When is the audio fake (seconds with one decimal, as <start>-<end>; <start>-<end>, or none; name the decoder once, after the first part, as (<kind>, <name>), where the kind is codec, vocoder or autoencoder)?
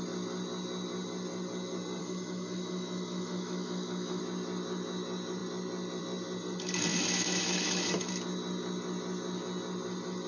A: 2.0-4.2 (autoencoder, DAC-VAE); 6.9-8.1